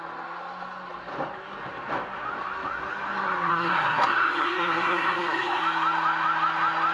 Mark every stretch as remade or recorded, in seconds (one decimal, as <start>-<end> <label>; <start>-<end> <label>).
0.0-3.5 recorded; 3.5-5.6 remade; 5.6-6.9 recorded